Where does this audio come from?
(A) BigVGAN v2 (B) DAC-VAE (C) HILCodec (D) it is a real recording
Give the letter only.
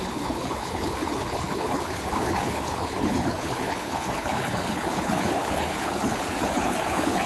C